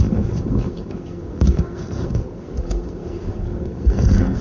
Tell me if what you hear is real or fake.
fake